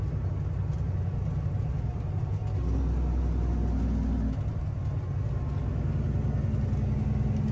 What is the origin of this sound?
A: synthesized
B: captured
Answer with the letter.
B